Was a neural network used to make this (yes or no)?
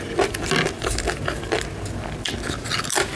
no